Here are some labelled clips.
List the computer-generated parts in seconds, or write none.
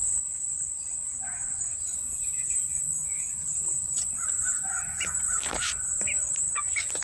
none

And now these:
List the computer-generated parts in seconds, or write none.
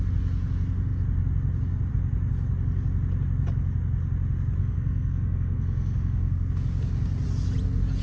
4.6-6.5 (codec, SNAC)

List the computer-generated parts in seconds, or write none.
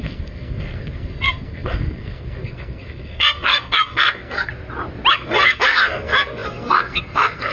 0.0-4.5 (codec, SNAC); 5.1-7.5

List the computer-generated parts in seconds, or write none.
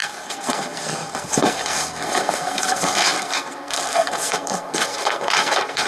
0.0-5.9 (codec, SNAC)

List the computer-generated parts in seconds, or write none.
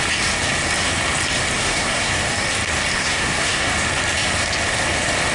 1.6-2.1 (codec, SNAC); 3.0-3.7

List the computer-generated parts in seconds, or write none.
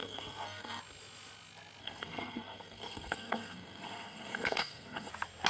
0.0-0.8 (codec, SNAC); 1.8-5.1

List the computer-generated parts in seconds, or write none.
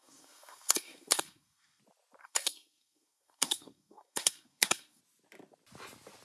0.0-1.8 (codec, SNAC); 2.2-5.0